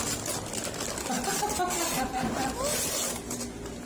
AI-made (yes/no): no